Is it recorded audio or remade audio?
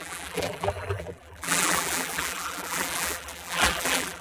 remade